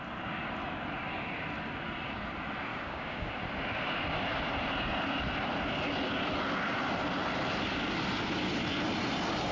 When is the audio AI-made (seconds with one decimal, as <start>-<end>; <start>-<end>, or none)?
2.7-3.3